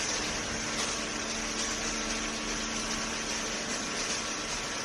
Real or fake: real